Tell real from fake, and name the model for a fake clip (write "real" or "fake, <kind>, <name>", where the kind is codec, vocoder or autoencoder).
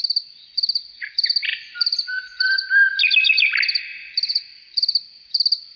real